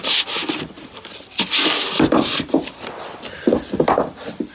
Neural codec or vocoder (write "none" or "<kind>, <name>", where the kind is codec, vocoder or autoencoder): none